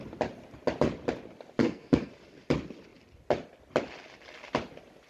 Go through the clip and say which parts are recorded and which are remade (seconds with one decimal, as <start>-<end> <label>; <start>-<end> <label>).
0.0-1.6 recorded; 1.6-2.1 remade; 2.1-5.1 recorded